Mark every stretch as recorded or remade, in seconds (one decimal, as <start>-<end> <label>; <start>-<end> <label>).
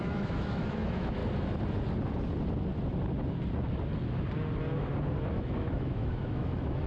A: 0.0-1.2 remade; 1.2-5.3 recorded; 5.3-6.9 remade